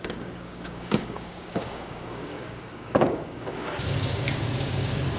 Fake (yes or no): yes